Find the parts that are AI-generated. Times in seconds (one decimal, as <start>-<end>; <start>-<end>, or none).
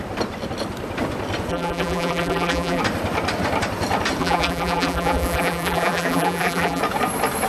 1.5-2.8; 4.2-6.8